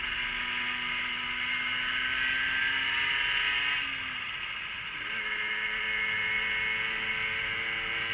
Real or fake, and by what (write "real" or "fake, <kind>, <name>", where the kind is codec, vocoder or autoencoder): real